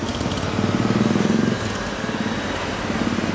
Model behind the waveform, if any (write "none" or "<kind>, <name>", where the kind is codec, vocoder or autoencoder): none